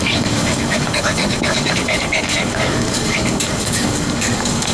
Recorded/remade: remade